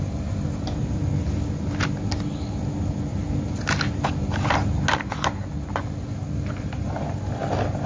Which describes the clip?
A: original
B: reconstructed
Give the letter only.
A